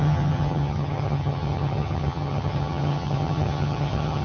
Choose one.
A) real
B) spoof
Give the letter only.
B